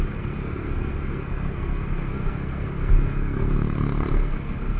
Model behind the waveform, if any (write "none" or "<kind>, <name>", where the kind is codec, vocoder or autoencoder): codec, SNAC